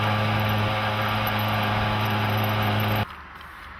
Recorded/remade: recorded